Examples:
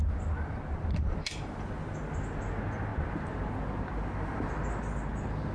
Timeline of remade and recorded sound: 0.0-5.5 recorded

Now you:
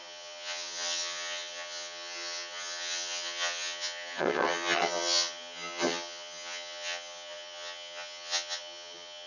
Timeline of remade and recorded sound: 0.0-9.3 remade